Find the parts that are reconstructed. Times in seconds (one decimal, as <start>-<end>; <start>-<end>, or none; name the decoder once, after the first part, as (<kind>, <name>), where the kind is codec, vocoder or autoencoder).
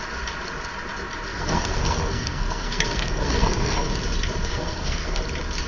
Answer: 1.3-3.9 (codec, SNAC); 4.4-5.2